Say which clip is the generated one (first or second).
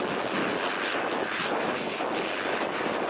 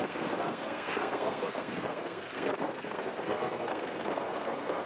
second